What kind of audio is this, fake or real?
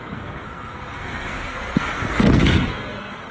fake